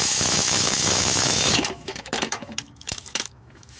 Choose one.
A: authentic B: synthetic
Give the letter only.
B